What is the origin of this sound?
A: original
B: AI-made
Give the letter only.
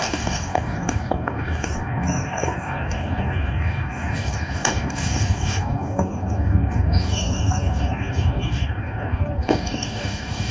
B